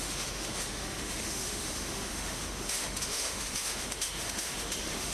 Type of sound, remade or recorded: remade